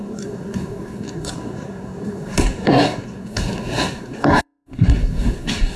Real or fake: fake